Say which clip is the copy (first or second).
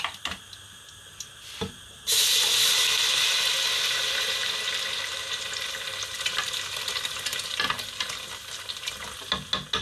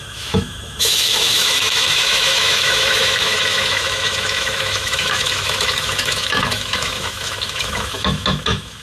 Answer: second